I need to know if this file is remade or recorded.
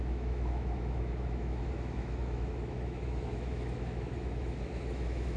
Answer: remade